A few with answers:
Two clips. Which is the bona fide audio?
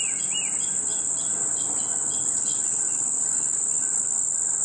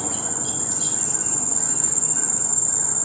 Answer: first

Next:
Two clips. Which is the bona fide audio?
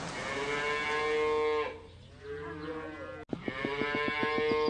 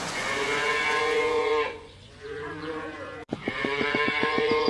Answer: first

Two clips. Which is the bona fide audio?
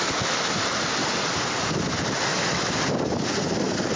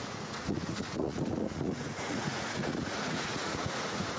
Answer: first